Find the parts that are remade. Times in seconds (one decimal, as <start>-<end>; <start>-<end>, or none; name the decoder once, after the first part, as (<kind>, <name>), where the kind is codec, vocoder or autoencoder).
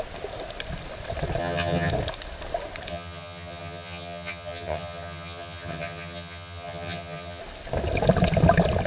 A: 1.4-1.9 (vocoder, HiFi-GAN); 2.9-7.4